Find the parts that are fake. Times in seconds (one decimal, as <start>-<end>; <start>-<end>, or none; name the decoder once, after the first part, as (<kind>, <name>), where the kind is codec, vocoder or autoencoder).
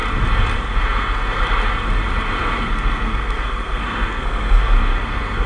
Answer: 0.6-1.4 (codec, SNAC); 2.4-5.5